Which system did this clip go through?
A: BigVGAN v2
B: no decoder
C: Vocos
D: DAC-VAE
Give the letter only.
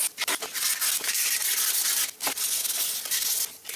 B